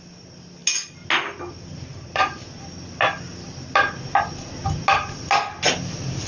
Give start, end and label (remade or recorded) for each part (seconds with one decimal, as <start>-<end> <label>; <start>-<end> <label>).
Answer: 0.0-1.9 recorded; 1.9-2.4 remade; 2.4-6.3 recorded